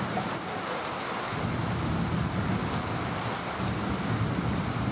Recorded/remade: recorded